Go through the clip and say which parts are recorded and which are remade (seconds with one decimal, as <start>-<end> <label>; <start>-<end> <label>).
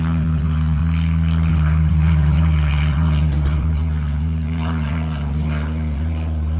0.0-0.8 remade; 0.8-1.5 recorded; 1.5-6.6 remade